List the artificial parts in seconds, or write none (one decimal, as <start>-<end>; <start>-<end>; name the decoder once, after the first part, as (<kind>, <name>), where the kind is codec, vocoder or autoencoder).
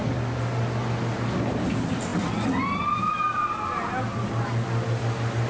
none